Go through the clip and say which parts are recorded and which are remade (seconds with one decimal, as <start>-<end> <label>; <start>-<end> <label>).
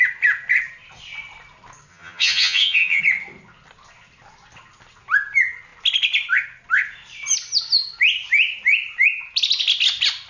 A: 0.0-1.9 recorded; 1.9-3.0 remade; 3.0-10.3 recorded